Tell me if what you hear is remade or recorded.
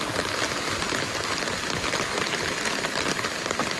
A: recorded